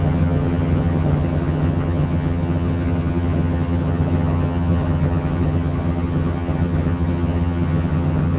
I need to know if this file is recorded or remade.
remade